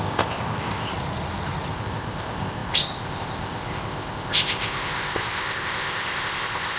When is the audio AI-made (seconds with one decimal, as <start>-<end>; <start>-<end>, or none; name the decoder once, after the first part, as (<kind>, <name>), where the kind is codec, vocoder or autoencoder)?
0.0-0.9 (codec, ZipCodec); 1.7-6.8